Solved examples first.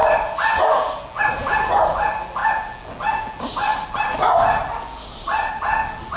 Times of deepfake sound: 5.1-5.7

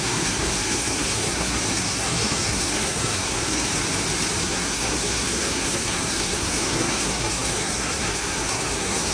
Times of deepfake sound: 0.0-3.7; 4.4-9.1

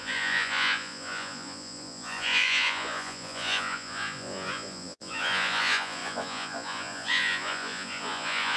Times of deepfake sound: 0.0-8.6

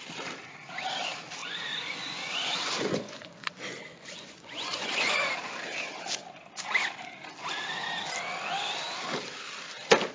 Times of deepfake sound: 1.4-5.2